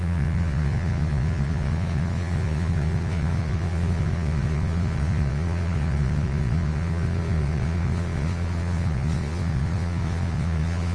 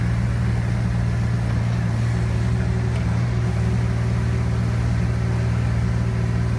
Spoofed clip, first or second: first